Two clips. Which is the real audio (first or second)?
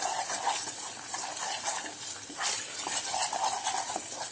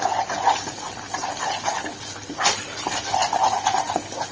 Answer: second